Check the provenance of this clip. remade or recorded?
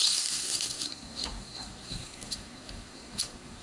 remade